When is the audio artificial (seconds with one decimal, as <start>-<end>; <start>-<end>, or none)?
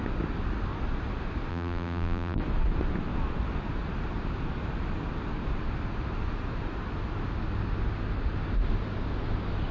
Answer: 1.5-2.4